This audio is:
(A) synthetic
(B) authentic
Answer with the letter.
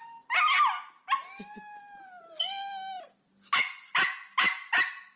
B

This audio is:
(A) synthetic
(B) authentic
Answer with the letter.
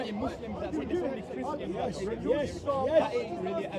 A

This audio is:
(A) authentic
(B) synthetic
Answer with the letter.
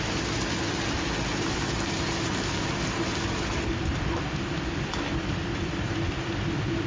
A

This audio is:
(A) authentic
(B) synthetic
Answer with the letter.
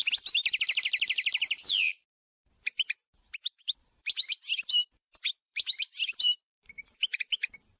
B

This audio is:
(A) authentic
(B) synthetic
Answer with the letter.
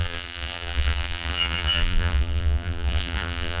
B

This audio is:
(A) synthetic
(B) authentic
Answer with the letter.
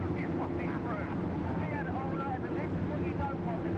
A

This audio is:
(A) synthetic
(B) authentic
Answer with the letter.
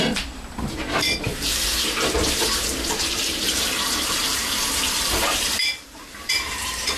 A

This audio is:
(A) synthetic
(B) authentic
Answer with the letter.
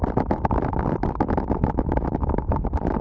B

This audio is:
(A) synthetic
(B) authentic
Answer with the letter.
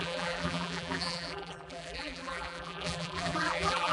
A